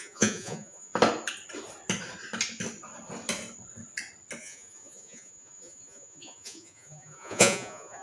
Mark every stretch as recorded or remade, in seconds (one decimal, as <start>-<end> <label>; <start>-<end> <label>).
0.0-0.9 remade; 0.9-4.4 recorded; 4.4-8.0 remade